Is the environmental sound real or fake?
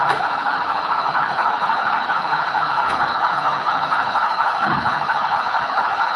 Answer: fake